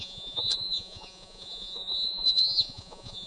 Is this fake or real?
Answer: fake